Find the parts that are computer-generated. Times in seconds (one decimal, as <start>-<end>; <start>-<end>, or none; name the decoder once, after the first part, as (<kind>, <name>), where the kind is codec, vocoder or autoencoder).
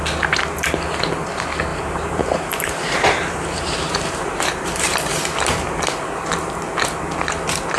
1.7-5.2 (vocoder, BigVGAN v2)